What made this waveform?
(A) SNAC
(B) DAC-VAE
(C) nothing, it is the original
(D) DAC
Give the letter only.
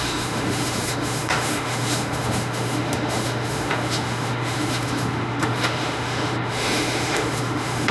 B